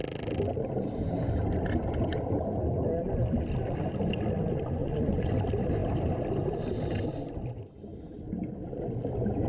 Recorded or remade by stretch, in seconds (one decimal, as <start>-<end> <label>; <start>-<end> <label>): 0.0-4.8 recorded; 4.8-5.3 remade; 5.3-9.5 recorded